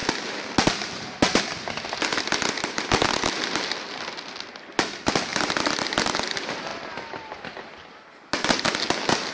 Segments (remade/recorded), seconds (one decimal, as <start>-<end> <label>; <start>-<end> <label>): 0.0-5.3 recorded; 5.3-5.8 remade; 5.8-6.7 recorded; 6.7-7.5 remade; 7.5-9.3 recorded